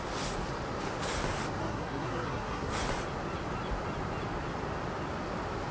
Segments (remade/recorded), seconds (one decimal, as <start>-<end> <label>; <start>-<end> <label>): 0.0-1.6 recorded; 1.6-2.7 remade; 2.7-5.7 recorded

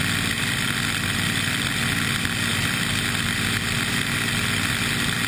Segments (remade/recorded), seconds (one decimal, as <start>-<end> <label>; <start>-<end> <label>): 0.0-5.3 recorded